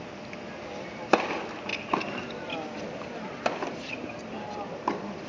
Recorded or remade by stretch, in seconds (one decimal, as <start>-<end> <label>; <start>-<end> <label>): 0.0-1.7 recorded; 1.7-5.3 remade